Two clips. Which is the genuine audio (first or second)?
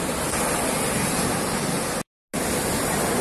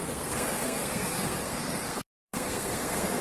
first